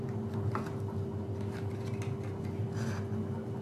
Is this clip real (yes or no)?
yes